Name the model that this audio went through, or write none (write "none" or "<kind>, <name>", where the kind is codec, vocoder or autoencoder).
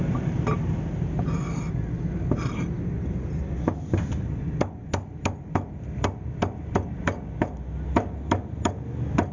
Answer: none